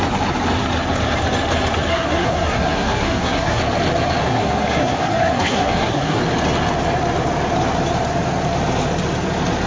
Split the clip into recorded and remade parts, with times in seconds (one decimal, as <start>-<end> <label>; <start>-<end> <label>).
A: 0.0-1.9 recorded; 1.9-3.6 remade; 3.6-4.2 recorded; 4.2-6.2 remade; 6.2-9.7 recorded